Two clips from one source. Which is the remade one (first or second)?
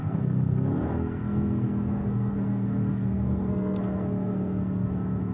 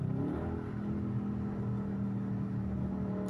first